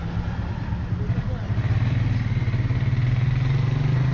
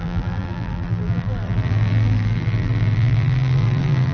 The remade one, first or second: second